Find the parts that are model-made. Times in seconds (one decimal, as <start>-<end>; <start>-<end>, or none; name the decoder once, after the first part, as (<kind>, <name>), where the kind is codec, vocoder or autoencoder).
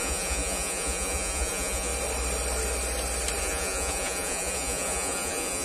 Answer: 0.0-1.9 (vocoder, Vocos); 3.4-5.6